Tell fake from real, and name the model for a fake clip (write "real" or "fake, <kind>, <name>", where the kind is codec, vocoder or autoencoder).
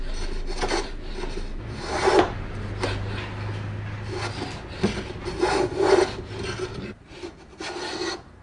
real